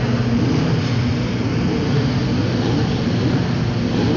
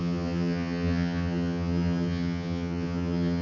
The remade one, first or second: second